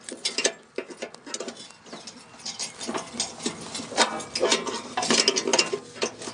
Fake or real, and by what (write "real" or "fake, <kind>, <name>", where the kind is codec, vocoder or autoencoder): real